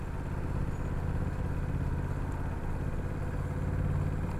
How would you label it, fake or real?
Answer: real